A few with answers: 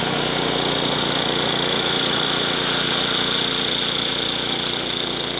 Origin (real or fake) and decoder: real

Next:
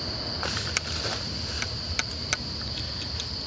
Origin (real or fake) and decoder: real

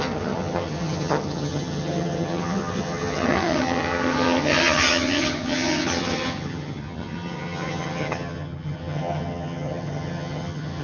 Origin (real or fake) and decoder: fake, vocoder, HiFi-GAN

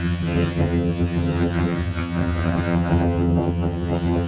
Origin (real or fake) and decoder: fake, vocoder, HiFi-GAN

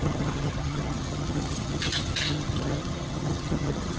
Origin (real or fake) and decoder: fake, vocoder, HiFi-GAN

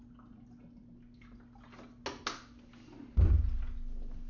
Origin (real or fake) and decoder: real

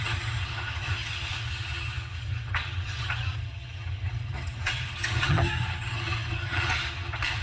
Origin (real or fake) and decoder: fake, vocoder, HiFi-GAN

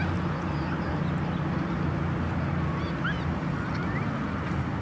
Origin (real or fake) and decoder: real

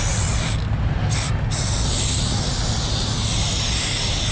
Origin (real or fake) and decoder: real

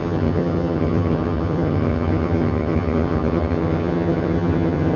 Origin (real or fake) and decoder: fake, vocoder, HiFi-GAN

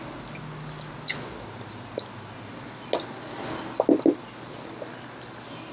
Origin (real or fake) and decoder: real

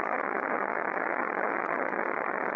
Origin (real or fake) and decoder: fake, vocoder, HiFi-GAN